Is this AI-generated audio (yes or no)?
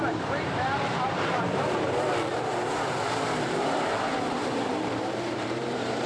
yes